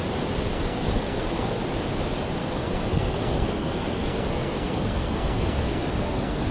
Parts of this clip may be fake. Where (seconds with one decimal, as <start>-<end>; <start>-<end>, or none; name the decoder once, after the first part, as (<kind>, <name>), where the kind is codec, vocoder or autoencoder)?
0.5-1.6 (codec, SNAC); 2.4-6.5